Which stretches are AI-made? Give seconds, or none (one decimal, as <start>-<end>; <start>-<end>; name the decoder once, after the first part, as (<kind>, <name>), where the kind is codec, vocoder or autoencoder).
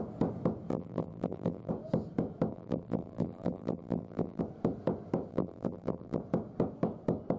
0.7-1.7 (vocoder, BigVGAN v2); 2.5-4.4; 5.3-6.2